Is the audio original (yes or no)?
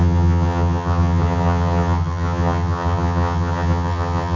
no